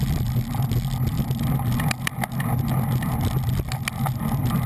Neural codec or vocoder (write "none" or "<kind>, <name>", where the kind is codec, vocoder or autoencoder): none